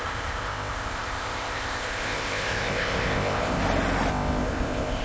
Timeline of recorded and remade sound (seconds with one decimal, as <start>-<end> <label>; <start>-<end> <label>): 0.0-3.6 remade; 3.6-4.1 recorded; 4.1-5.0 remade